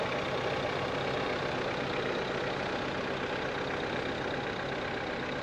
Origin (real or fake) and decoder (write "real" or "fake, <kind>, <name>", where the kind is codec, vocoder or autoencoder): real